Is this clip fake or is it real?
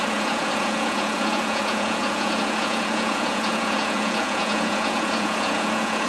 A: fake